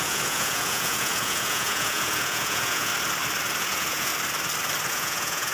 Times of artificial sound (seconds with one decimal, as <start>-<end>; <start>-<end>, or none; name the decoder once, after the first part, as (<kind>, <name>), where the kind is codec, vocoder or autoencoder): 0.0-2.9 (vocoder, Vocos); 3.6-4.1; 4.9-5.5